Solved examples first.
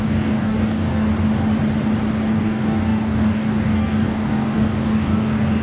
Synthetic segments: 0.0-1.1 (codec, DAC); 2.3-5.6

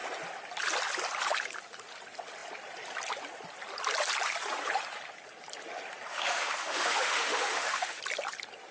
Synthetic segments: 6.1-8.0 (autoencoder, DAC-VAE)

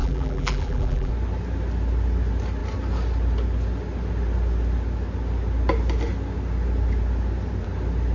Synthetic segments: 0.0-1.1 (vocoder, BigVGAN v2)

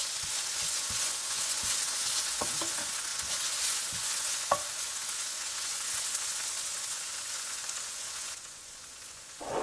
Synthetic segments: 0.0-9.6 (vocoder, Vocos)